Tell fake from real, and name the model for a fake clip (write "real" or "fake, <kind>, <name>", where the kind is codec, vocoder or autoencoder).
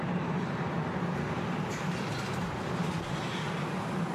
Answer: real